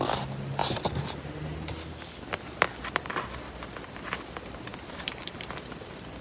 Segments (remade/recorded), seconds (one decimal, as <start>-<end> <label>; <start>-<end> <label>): 0.0-6.2 recorded